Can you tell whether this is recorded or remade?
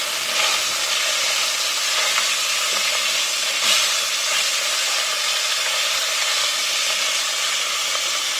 recorded